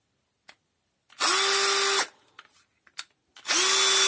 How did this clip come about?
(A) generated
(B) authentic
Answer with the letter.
B